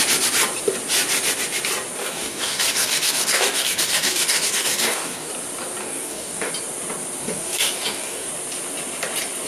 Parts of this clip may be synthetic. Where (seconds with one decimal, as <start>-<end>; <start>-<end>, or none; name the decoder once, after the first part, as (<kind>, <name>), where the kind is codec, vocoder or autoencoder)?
2.0-5.3 (codec, DAC); 5.8-6.5; 7.2-8.3